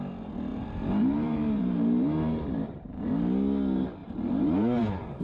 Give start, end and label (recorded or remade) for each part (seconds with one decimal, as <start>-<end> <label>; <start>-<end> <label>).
0.0-0.5 recorded; 0.5-3.1 remade; 3.1-4.0 recorded; 4.0-5.2 remade

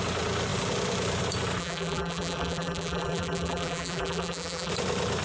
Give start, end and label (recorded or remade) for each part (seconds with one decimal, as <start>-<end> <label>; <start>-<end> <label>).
0.0-1.6 recorded; 1.6-4.7 remade; 4.7-5.2 recorded

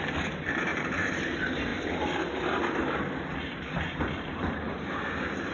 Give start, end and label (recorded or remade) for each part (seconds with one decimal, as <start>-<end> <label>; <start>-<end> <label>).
0.0-0.7 recorded; 0.7-1.2 remade; 1.2-3.3 recorded; 3.3-5.5 remade

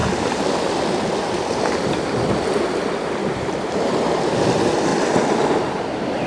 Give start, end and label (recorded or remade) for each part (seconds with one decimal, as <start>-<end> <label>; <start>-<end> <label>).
0.0-3.2 recorded; 3.2-4.2 remade; 4.2-6.3 recorded

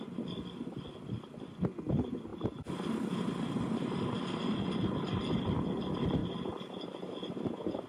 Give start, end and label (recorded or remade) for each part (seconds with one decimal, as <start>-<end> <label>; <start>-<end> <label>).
0.0-7.9 recorded